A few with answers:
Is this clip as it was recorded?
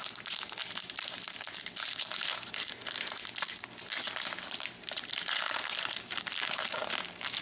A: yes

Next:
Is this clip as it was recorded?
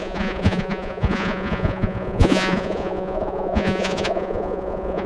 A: no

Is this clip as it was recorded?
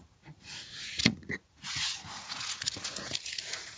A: no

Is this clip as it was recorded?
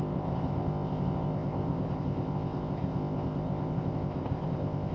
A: no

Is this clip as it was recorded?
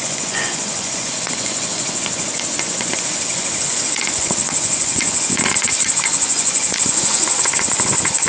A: no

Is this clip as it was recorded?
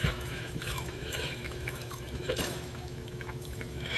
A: no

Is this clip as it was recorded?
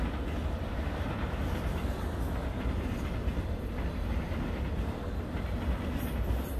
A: yes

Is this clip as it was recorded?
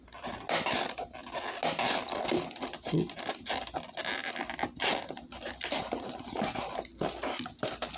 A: yes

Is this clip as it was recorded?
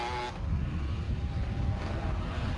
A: yes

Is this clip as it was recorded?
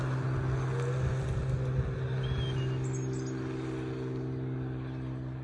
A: yes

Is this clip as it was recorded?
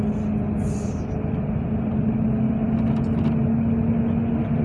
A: yes